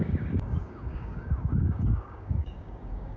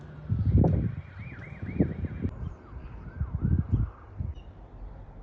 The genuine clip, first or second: second